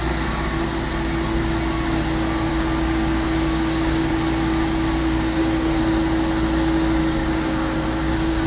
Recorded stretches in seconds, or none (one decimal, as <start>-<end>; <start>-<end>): 0.0-2.5; 4.1-5.0; 5.8-7.0